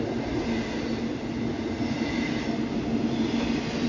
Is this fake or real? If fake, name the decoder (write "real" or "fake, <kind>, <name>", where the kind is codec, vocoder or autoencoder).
real